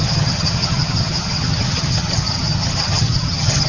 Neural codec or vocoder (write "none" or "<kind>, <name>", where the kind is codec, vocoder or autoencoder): vocoder, HiFi-GAN